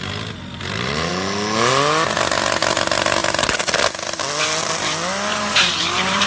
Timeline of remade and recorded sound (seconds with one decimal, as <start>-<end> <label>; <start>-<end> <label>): 0.0-5.3 recorded; 5.3-6.3 remade